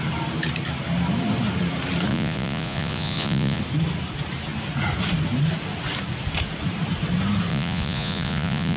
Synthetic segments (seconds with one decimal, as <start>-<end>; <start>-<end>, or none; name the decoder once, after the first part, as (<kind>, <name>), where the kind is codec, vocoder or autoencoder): 2.1-3.6 (vocoder, Vocos); 7.5-8.8